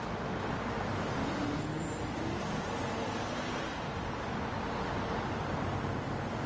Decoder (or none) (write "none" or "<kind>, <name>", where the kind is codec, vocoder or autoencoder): none